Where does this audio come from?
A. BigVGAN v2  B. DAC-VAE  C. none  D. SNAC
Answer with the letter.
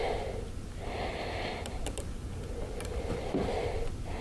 C